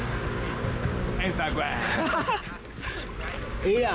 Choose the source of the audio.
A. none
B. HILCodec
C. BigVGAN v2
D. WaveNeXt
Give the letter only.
A